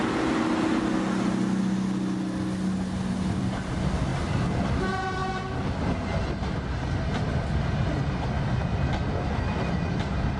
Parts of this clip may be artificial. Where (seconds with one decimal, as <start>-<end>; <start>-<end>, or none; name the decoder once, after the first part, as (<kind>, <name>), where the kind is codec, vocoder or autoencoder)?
none